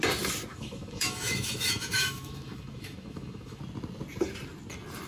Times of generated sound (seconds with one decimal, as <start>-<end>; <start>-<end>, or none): 0.5-3.6